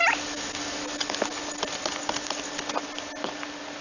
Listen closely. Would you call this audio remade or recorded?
recorded